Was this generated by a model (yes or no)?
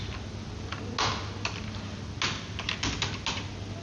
no